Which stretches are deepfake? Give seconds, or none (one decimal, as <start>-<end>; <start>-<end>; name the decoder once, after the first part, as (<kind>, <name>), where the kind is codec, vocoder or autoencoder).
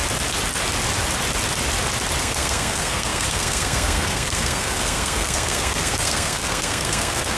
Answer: 2.2-7.4 (codec, SNAC)